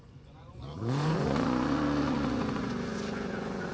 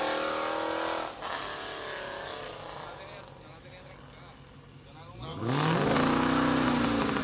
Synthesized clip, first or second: first